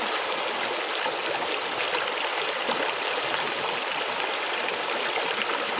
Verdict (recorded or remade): recorded